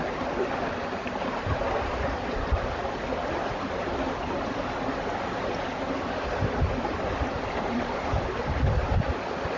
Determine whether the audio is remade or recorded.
recorded